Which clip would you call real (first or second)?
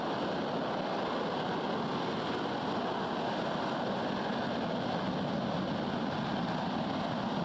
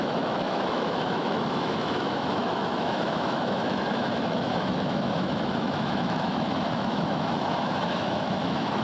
first